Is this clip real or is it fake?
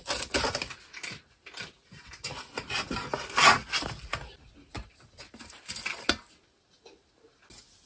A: real